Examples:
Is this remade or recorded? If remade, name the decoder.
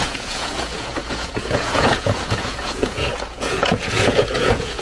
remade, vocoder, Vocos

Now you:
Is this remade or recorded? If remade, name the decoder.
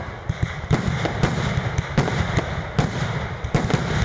recorded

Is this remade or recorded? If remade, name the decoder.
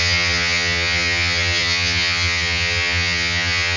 remade, vocoder, HiFi-GAN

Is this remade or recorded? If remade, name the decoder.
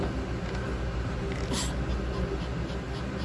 recorded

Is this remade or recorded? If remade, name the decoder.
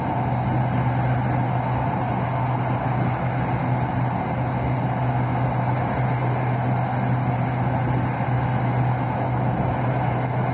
recorded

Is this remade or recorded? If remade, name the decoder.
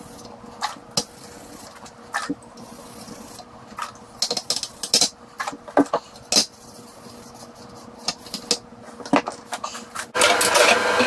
recorded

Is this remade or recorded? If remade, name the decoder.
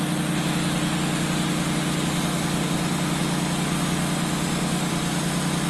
recorded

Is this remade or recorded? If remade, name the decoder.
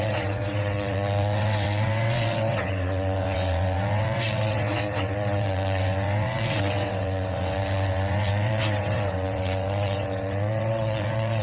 remade, vocoder, WaveNeXt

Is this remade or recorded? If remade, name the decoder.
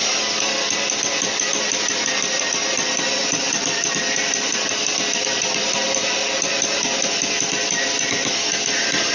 recorded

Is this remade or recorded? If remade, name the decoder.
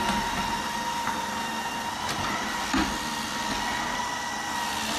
recorded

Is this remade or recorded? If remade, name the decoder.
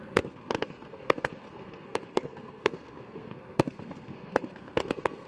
remade, codec, SNAC